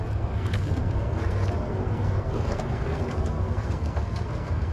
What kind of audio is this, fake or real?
fake